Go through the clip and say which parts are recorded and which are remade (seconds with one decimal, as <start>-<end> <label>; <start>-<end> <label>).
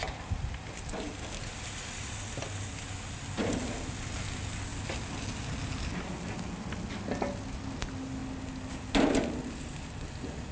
0.0-10.5 recorded